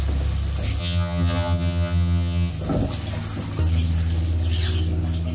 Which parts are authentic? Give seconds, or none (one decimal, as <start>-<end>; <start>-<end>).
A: 0.0-0.8; 2.5-5.3